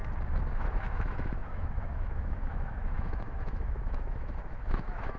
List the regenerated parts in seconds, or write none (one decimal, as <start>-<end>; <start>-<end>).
0.5-5.2